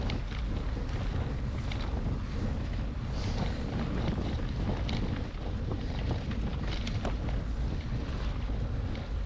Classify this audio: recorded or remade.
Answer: recorded